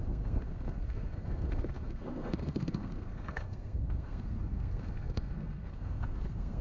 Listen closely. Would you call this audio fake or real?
fake